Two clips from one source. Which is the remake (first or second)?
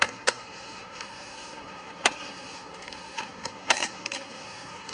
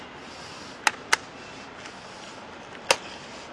first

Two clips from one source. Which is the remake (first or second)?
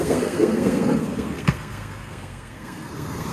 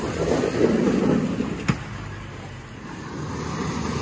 first